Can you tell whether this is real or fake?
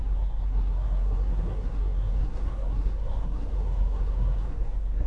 fake